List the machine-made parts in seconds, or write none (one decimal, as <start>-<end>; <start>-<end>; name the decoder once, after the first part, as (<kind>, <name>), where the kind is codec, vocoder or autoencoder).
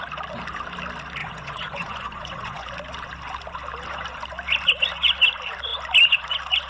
1.2-2.7 (vocoder, Vocos)